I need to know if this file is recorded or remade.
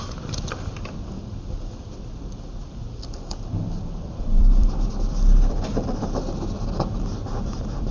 remade